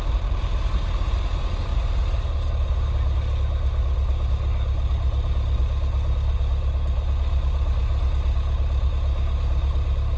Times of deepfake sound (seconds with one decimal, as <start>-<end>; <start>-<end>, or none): none